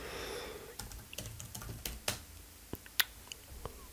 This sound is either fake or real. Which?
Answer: real